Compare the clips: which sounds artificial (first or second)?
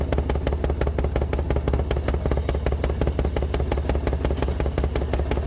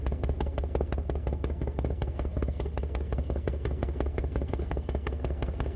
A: second